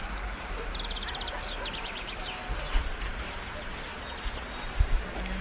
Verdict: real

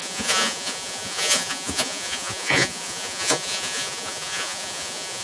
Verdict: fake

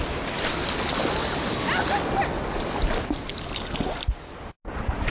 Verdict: real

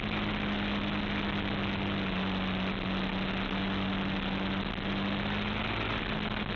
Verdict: real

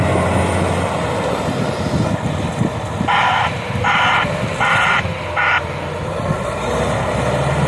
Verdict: real